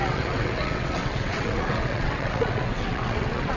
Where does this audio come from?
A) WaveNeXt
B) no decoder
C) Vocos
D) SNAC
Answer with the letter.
A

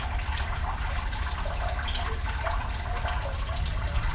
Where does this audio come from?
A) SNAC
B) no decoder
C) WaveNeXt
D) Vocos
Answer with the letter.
B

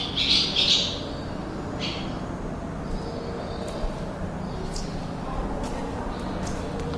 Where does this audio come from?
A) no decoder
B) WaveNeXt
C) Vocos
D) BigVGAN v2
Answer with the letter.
A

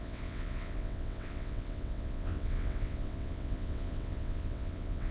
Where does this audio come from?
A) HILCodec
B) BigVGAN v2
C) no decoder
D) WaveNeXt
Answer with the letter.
D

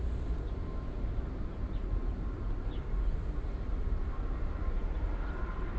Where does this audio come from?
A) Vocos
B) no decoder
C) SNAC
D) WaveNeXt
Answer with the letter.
B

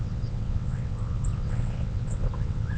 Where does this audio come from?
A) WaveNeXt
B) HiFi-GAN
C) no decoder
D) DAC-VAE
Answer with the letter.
A